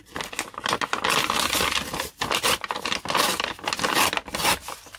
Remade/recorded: recorded